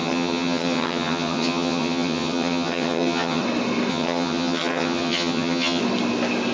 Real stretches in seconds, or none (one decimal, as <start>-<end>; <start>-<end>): 3.4-3.9; 5.8-6.5

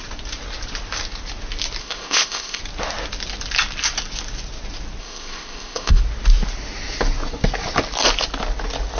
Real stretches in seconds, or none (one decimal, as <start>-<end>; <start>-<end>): 0.0-1.8; 2.6-5.0; 6.0-9.0